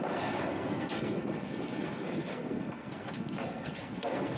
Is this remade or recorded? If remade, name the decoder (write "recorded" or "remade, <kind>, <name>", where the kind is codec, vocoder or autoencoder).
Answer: remade, codec, SNAC